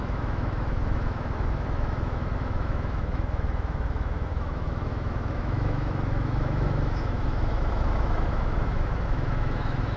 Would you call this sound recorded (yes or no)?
no